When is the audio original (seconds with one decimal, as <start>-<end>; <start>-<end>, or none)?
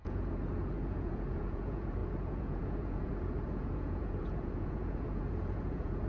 none